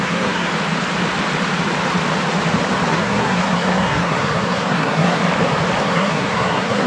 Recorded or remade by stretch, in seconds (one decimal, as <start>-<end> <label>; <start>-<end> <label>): 0.0-0.5 remade; 0.5-2.9 recorded; 2.9-5.2 remade; 5.2-5.8 recorded; 5.8-6.9 remade